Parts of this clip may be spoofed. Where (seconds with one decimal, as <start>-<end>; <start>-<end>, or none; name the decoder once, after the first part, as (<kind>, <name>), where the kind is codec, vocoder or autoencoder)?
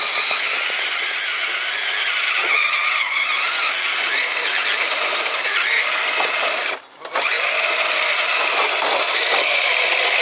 none